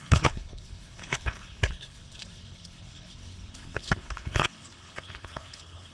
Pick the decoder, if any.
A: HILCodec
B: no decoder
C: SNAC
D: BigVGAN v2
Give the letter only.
A